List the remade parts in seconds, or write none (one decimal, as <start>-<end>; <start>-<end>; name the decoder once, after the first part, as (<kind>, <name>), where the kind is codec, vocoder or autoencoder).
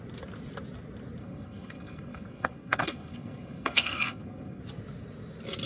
1.2-4.6 (codec, SNAC)